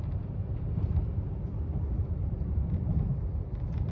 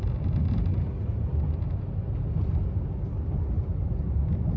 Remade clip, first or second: first